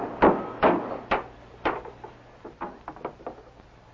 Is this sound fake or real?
real